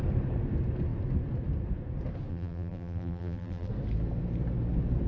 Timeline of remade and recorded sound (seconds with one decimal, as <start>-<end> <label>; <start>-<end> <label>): 0.0-2.3 recorded; 2.3-3.7 remade; 3.7-5.1 recorded